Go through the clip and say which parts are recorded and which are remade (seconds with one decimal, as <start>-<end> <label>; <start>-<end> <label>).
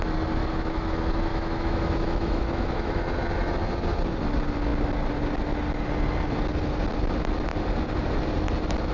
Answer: 0.0-0.4 recorded; 0.4-0.9 remade; 0.9-1.3 recorded; 1.3-3.0 remade; 3.0-8.9 recorded